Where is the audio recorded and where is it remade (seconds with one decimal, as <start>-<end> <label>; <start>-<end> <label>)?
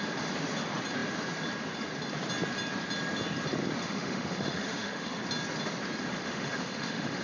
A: 0.0-3.8 recorded; 3.8-5.2 remade; 5.2-6.1 recorded; 6.1-7.2 remade